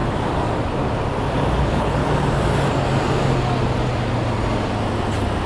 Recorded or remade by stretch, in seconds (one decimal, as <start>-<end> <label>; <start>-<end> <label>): 0.0-1.6 recorded; 1.6-2.0 remade; 2.0-5.5 recorded